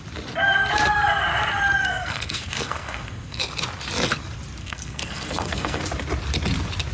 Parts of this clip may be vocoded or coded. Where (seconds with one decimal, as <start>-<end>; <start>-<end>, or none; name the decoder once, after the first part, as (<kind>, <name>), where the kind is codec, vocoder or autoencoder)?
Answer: 1.8-3.4 (codec, SNAC); 4.6-5.8